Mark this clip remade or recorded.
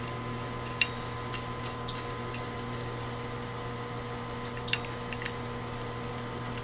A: recorded